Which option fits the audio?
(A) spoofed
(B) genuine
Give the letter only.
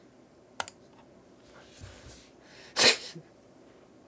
B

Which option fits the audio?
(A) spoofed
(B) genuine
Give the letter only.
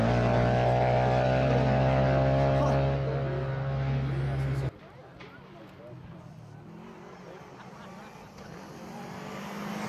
B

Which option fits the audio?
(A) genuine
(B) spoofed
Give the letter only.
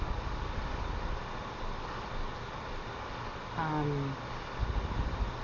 A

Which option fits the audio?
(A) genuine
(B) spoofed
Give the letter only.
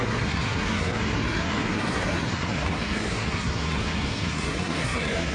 B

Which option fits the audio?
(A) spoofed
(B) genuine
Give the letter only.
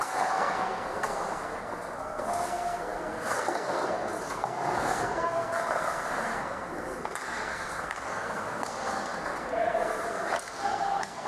A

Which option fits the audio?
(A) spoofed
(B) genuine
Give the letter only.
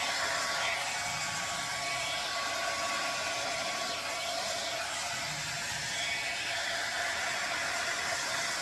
B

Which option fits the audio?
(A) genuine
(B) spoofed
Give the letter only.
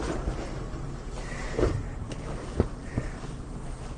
A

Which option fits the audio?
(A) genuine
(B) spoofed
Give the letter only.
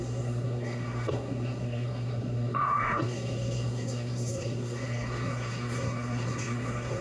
B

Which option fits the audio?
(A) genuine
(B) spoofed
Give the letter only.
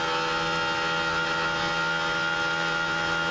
A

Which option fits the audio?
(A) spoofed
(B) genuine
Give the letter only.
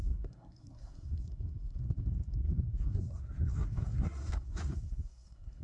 A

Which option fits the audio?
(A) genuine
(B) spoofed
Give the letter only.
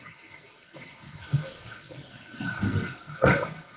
B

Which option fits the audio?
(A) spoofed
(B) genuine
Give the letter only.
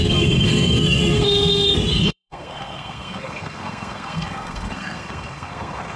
A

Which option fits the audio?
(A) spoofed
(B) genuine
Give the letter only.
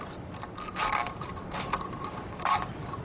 B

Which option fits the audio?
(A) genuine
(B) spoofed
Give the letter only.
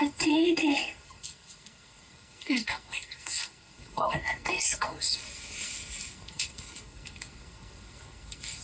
B